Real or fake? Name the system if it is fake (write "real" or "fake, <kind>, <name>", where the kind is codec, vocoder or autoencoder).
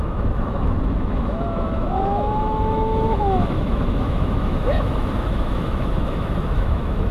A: fake, autoencoder, DAC-VAE